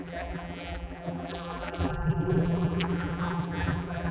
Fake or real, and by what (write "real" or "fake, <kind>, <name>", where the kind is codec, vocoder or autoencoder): fake, vocoder, BigVGAN v2